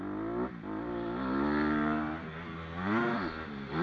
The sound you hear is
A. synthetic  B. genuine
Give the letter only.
B